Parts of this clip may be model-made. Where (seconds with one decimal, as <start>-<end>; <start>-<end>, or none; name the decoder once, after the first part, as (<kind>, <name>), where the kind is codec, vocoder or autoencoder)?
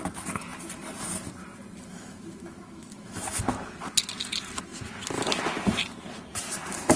1.9-3.4 (autoencoder, DAC-VAE)